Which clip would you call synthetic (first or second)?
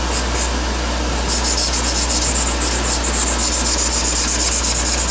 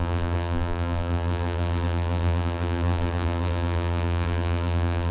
second